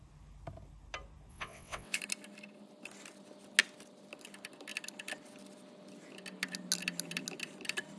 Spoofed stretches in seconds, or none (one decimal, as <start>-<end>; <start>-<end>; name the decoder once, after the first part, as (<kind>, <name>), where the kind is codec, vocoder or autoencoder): 1.3-2.0 (vocoder, WaveNeXt)